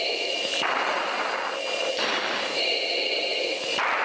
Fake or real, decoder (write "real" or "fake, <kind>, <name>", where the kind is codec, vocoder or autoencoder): real